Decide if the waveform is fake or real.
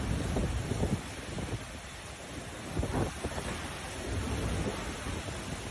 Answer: real